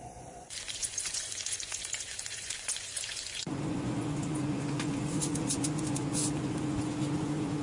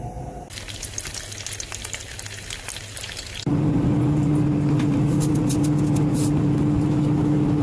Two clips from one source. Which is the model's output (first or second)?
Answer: first